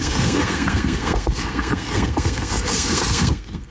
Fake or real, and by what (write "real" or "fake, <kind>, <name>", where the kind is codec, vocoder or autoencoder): fake, codec, SNAC